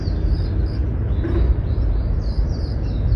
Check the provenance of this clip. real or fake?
real